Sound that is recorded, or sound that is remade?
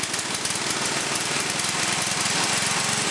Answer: recorded